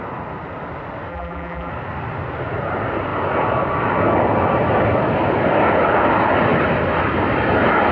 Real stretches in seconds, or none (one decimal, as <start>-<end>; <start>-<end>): 0.0-1.1; 1.7-7.9